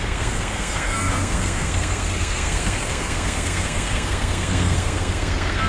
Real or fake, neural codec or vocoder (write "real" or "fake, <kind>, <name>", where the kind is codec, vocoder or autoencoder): fake, codec, SNAC